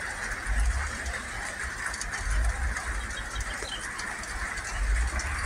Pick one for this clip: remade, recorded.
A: recorded